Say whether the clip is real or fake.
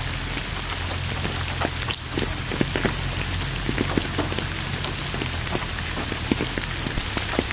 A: real